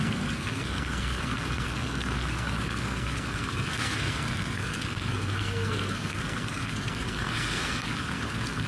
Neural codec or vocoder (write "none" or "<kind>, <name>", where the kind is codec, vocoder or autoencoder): codec, SNAC